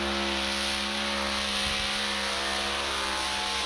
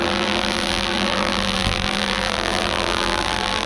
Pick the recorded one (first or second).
first